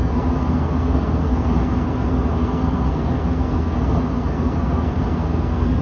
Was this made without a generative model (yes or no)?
no